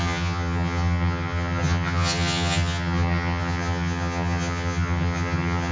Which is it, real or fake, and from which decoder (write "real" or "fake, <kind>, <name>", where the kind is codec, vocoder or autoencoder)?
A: fake, vocoder, HiFi-GAN